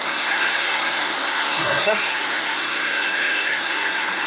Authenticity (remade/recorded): remade